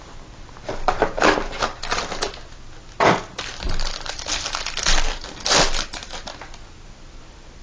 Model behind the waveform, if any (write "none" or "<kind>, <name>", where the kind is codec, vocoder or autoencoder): none